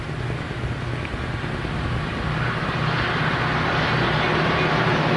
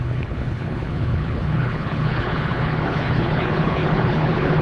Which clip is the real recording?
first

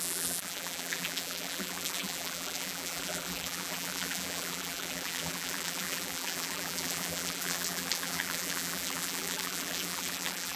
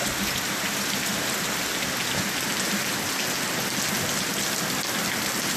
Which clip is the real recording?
second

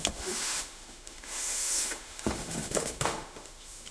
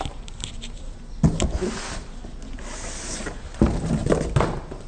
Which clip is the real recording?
second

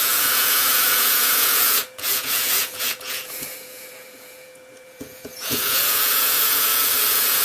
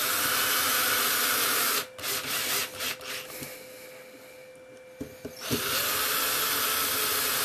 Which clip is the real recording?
second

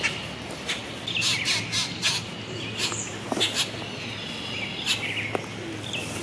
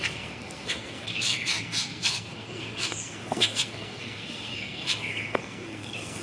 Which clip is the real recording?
first